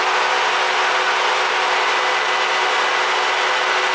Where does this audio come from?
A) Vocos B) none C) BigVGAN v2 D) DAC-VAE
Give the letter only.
B